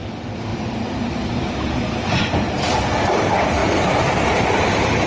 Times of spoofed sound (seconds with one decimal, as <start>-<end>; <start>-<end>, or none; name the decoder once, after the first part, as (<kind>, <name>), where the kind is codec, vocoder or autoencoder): 0.5-2.6 (vocoder, BigVGAN v2)